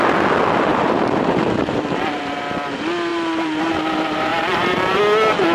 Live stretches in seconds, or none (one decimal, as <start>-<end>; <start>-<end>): 0.0-0.7; 2.3-3.1; 3.6-4.3; 5.0-5.5

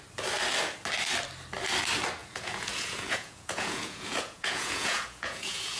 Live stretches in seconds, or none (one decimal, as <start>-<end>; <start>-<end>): 0.0-2.2